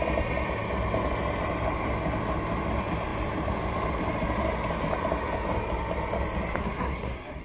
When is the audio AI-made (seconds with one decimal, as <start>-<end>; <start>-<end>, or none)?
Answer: 6.6-7.4